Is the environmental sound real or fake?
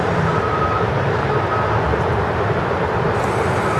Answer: fake